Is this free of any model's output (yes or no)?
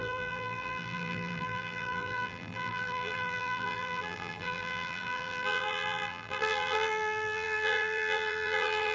no